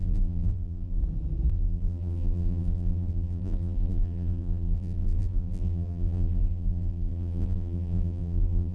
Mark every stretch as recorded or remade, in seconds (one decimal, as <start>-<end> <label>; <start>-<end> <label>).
0.0-1.0 remade; 1.0-1.5 recorded; 1.5-8.7 remade